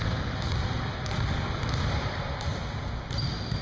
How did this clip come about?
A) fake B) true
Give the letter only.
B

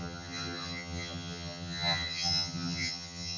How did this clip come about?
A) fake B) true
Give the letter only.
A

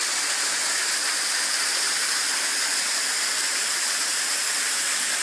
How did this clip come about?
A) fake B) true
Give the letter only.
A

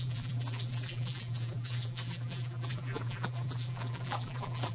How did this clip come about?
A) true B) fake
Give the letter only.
B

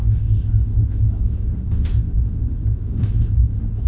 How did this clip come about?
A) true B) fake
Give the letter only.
B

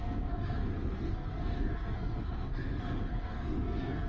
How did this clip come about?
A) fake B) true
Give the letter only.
A